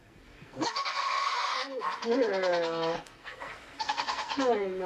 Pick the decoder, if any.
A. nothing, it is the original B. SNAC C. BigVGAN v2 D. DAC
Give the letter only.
B